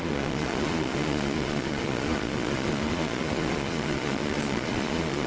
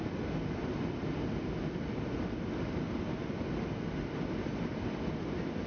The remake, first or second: first